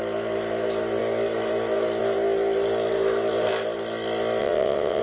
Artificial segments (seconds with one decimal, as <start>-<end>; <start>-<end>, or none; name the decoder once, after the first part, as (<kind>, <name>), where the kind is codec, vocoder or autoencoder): 4.4-5.0 (vocoder, WaveNeXt)

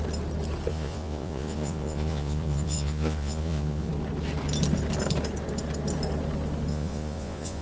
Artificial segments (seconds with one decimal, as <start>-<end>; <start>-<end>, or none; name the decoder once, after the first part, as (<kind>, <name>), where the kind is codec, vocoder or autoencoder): 0.7-3.9 (vocoder, Vocos); 6.7-7.6